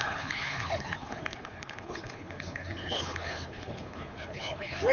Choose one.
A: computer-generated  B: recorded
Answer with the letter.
A